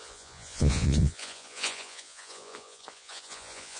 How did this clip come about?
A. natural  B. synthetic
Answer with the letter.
B